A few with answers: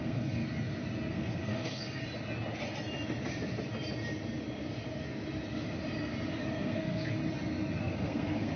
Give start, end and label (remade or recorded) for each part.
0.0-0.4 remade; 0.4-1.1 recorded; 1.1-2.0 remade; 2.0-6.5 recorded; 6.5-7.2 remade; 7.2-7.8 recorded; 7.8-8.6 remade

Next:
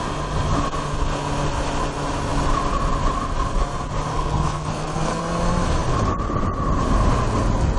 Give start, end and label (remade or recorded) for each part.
0.0-4.1 recorded; 4.1-5.2 remade; 5.2-7.8 recorded